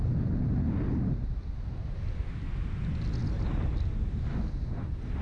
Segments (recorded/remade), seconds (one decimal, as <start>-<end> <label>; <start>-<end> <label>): 0.0-5.2 recorded